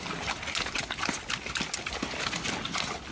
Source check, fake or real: real